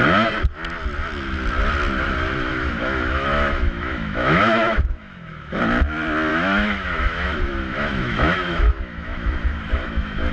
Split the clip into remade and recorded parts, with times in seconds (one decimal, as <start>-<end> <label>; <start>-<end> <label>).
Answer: 0.0-2.5 recorded; 2.5-5.6 remade; 5.6-6.3 recorded; 6.3-10.3 remade